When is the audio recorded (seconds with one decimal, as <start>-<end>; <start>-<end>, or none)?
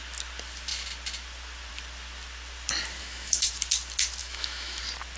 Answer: 0.0-3.0; 3.5-4.2; 4.8-5.2